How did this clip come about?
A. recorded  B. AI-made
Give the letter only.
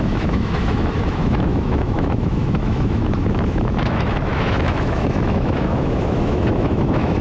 B